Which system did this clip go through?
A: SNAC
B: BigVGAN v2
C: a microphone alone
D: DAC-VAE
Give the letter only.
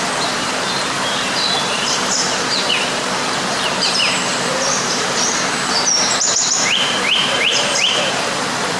B